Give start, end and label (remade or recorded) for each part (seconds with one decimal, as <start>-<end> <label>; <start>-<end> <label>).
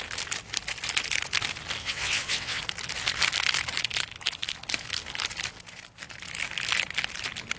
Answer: 0.0-1.8 recorded; 1.8-2.6 remade; 2.6-7.6 recorded